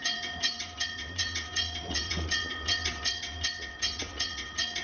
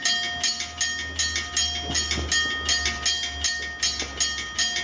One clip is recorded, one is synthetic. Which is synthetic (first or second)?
first